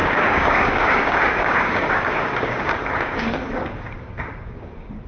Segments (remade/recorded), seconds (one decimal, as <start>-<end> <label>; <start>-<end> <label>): 0.0-5.1 remade